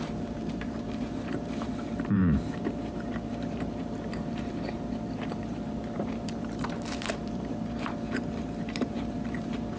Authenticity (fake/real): fake